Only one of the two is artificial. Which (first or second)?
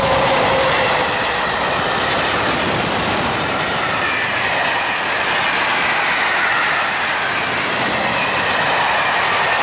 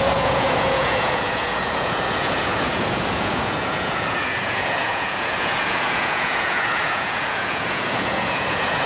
second